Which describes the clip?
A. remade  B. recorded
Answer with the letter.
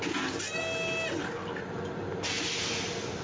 B